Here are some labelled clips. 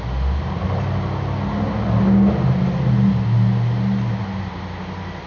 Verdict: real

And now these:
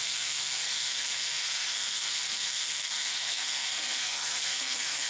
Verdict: fake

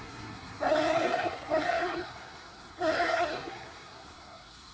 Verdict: fake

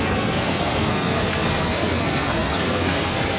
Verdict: fake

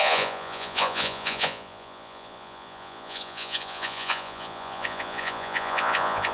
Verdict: fake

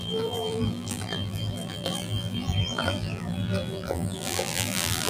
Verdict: fake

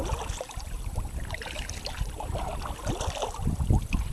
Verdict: real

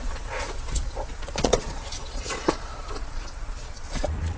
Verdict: fake